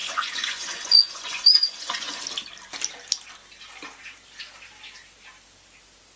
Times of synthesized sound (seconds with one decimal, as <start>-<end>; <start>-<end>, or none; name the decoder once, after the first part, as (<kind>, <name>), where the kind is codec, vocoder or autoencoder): 0.0-2.1 (vocoder, Vocos)